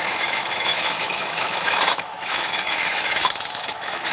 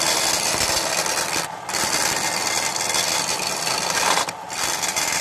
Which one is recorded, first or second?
second